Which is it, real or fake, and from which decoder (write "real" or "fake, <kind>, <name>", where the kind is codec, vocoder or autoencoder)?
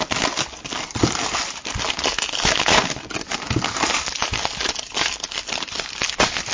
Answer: real